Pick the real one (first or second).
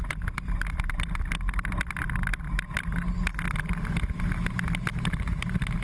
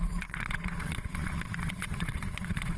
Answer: first